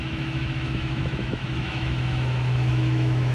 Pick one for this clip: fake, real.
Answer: fake